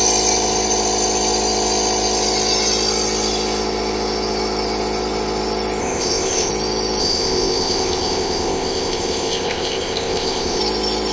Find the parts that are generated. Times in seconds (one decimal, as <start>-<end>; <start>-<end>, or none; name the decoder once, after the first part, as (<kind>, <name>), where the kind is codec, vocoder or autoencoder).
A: 5.8-6.5 (codec, ZipCodec); 7.0-10.6